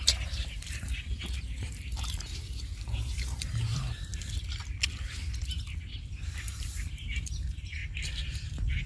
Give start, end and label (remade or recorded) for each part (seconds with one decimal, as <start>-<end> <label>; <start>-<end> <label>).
0.0-4.1 remade; 4.1-6.2 recorded; 6.2-7.8 remade; 7.8-8.9 recorded

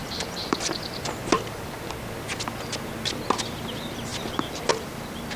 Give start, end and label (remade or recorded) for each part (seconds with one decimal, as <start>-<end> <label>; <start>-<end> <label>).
0.0-1.2 remade; 1.2-3.3 recorded; 3.3-5.4 remade

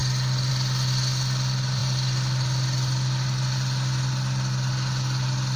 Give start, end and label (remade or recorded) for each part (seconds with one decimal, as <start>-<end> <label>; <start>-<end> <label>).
0.0-5.6 recorded

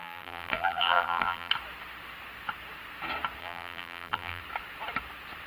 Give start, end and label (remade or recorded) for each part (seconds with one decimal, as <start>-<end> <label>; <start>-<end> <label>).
0.0-1.5 remade; 1.5-3.4 recorded; 3.4-4.4 remade; 4.4-5.5 recorded

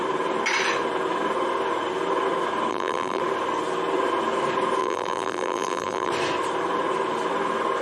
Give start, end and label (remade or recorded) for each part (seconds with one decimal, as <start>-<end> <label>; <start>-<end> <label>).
0.0-2.7 recorded; 2.7-3.2 remade; 3.2-4.8 recorded; 4.8-6.1 remade; 6.1-7.8 recorded

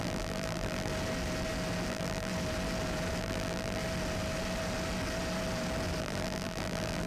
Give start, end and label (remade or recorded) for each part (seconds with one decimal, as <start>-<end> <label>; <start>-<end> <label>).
0.0-0.9 remade; 0.9-1.9 recorded; 1.9-2.3 remade; 2.3-3.2 recorded; 3.2-3.8 remade; 3.8-6.0 recorded; 6.0-7.1 remade

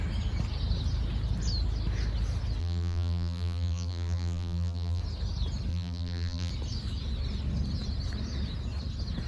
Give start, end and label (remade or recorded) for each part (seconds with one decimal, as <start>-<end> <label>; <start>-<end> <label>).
0.0-2.6 recorded; 2.6-5.0 remade; 5.0-5.7 recorded; 5.7-6.5 remade; 6.5-9.3 recorded